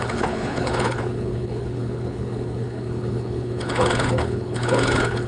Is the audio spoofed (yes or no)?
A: yes